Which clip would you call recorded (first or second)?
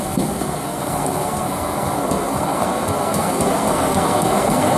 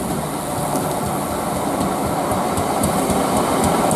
second